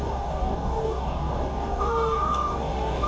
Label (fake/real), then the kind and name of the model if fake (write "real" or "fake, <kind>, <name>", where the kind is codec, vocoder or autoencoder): fake, codec, DAC